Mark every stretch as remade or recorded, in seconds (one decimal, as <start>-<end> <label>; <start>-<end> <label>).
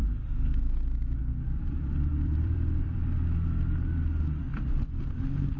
0.0-2.1 recorded; 2.1-3.2 remade; 3.2-4.4 recorded; 4.4-5.0 remade; 5.0-5.6 recorded